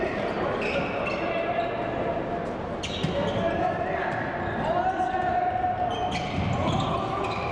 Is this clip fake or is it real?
real